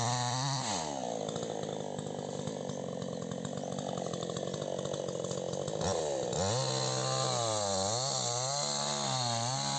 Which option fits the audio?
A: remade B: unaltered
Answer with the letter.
B